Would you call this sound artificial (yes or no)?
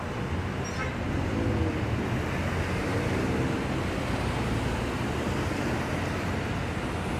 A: no